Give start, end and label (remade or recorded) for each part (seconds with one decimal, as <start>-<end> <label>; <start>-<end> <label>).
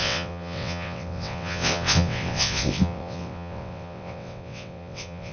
0.0-5.3 remade